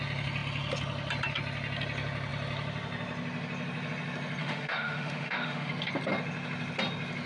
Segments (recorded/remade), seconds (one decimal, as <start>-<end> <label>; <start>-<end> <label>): 0.0-4.4 recorded; 4.4-5.7 remade; 5.7-7.3 recorded